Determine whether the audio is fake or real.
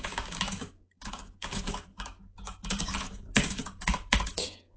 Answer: fake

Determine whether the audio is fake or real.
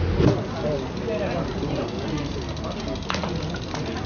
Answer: real